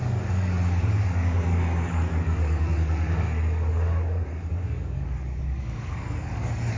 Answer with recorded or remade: remade